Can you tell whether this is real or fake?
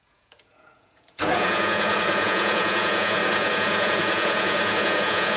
fake